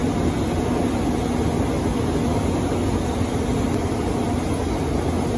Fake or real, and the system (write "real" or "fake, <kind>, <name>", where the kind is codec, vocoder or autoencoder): real